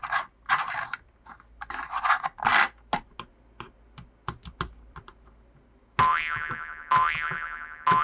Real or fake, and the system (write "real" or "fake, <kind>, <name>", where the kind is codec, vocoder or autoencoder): real